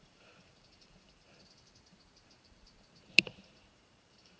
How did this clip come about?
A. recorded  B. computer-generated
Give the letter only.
B